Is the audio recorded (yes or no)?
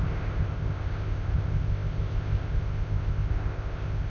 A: no